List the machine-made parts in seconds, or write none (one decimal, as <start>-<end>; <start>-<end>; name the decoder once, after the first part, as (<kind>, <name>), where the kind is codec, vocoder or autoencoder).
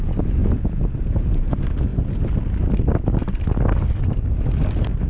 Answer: 0.4-1.4 (vocoder, Vocos)